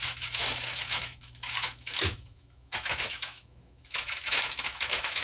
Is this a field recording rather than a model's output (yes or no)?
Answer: no